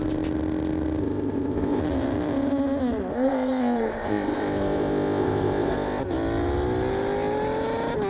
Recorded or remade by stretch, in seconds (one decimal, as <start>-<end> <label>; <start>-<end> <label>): 0.0-1.0 recorded; 1.0-1.8 remade; 1.8-3.1 recorded; 3.1-6.0 remade; 6.0-8.1 recorded